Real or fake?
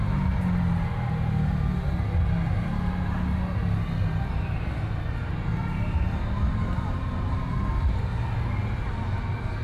real